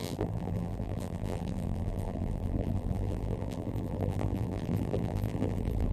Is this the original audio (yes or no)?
no